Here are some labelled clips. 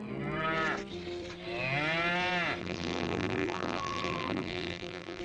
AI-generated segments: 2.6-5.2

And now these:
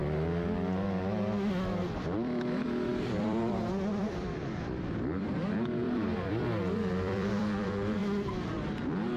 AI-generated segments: 2.0-8.0

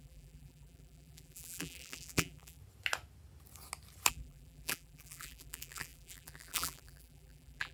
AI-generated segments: 0.0-2.6; 4.1-7.7

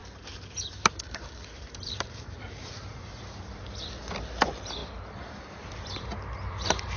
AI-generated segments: 0.0-3.9; 4.8-5.4